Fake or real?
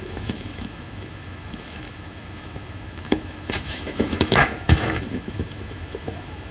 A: fake